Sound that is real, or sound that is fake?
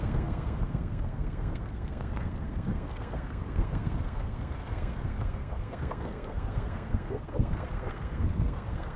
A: fake